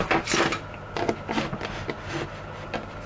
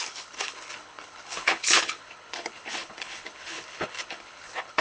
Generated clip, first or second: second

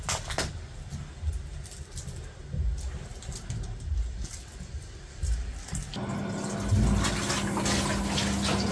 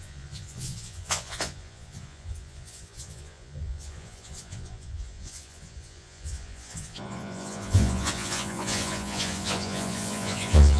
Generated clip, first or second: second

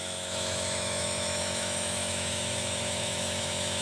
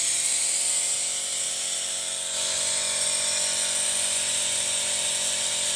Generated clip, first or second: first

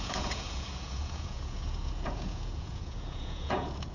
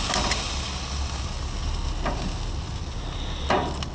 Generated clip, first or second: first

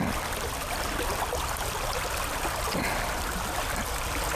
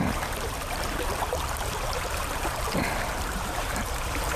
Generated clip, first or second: second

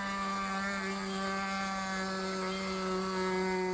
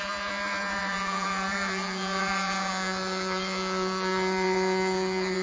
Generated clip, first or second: second